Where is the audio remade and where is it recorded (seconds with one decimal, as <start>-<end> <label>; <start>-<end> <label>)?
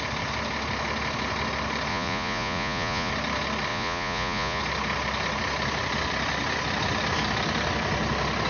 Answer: 0.0-1.9 recorded; 1.9-3.1 remade; 3.1-3.7 recorded; 3.7-4.6 remade; 4.6-8.5 recorded